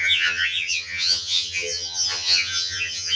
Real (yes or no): no